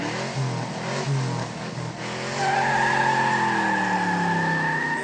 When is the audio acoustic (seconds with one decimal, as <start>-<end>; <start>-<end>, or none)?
0.0-1.4; 1.9-5.0